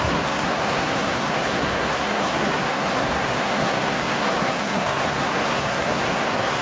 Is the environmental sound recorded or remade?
remade